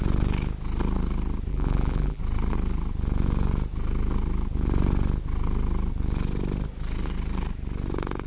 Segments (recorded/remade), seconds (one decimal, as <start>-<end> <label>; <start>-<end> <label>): 0.0-1.5 recorded; 1.5-2.2 remade; 2.2-8.3 recorded